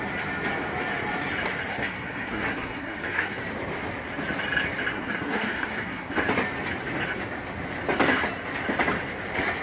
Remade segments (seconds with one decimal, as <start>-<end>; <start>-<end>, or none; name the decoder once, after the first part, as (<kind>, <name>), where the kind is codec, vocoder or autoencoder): 1.7-3.4 (codec, SNAC); 4.9-6.1